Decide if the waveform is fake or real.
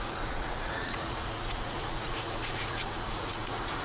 fake